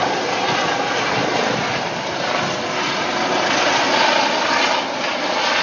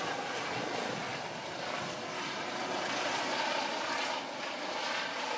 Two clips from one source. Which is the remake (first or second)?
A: second